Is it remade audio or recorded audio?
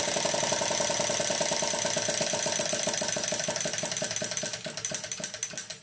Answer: recorded